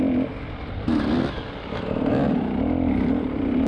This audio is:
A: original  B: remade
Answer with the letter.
A